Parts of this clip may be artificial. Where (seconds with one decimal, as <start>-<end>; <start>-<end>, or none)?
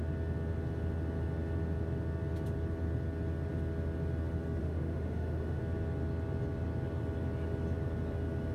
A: 4.6-5.6